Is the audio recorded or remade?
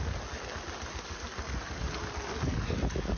recorded